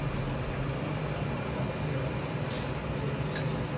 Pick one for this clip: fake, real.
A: real